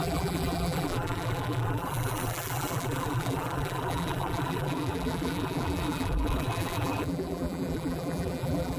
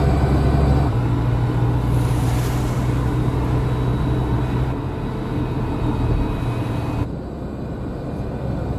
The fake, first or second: first